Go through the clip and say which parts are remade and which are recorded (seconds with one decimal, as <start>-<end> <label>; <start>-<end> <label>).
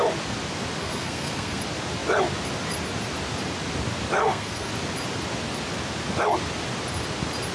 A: 0.0-0.8 recorded; 0.8-1.6 remade; 1.6-4.2 recorded; 4.2-4.7 remade; 4.7-7.5 recorded